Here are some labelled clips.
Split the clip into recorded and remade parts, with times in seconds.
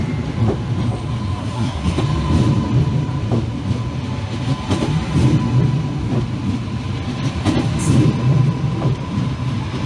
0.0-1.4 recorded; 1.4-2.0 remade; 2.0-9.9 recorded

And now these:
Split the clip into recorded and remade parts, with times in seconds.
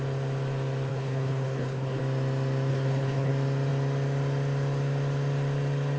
0.0-0.9 recorded; 0.9-2.0 remade; 2.0-2.7 recorded; 2.7-3.3 remade; 3.3-6.0 recorded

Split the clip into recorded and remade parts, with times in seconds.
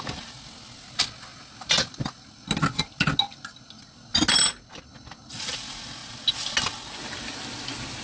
0.0-8.0 recorded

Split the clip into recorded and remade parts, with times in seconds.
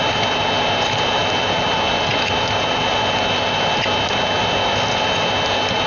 0.0-5.9 recorded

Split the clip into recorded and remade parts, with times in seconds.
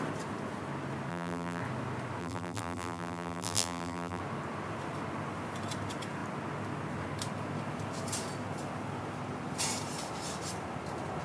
0.0-1.1 recorded; 1.1-1.6 remade; 1.6-2.2 recorded; 2.2-4.2 remade; 4.2-11.2 recorded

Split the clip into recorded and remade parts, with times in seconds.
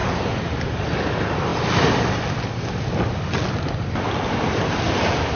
0.0-5.4 recorded